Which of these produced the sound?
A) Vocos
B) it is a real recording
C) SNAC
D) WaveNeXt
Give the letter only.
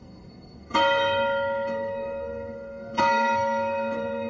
C